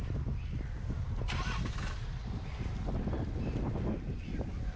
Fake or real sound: real